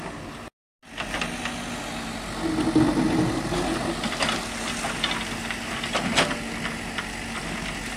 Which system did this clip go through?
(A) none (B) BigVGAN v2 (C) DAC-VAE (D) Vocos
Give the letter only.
A